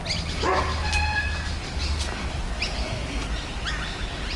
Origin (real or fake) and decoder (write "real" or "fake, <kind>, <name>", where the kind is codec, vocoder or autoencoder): real